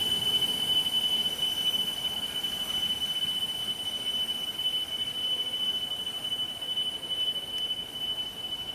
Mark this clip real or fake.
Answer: real